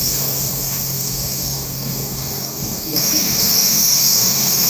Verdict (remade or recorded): remade